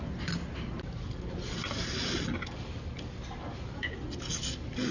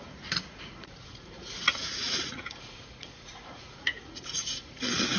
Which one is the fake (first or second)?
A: second